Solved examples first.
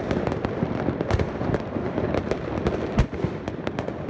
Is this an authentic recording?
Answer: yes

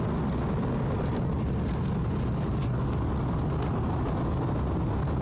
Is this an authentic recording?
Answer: yes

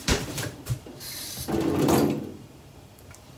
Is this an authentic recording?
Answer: no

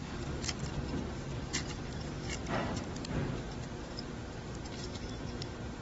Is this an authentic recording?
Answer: no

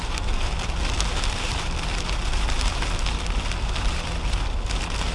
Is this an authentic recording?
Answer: yes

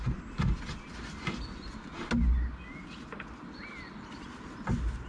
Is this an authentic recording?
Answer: yes